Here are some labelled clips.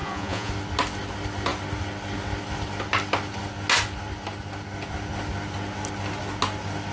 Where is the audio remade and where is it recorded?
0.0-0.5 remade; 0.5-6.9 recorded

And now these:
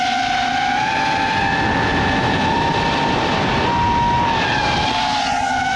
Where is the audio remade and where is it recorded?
0.0-5.8 recorded

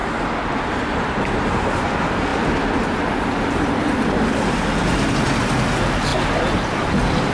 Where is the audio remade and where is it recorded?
0.0-7.3 recorded

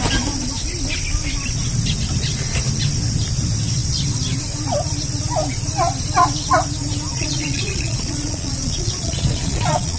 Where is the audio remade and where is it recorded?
0.0-7.1 recorded; 7.1-10.0 remade